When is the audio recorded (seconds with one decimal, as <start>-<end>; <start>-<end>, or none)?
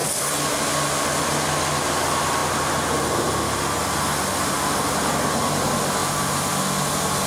0.0-6.0; 6.5-7.3